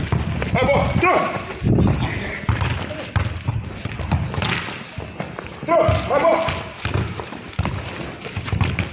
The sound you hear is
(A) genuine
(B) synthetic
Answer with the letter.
A